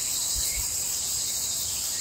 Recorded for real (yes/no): yes